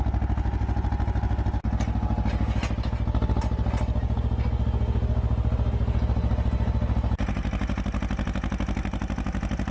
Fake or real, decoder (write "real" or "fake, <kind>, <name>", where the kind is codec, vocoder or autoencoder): real